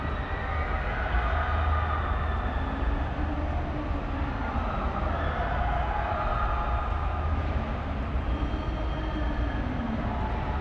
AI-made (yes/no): no